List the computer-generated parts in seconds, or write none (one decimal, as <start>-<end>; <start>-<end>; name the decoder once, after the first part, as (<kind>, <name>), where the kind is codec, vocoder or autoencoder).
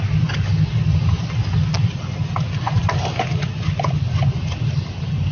0.0-0.5 (vocoder, BigVGAN v2); 3.7-5.3